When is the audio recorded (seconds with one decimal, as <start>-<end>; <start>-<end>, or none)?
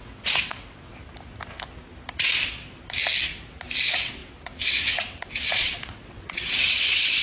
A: 0.9-3.8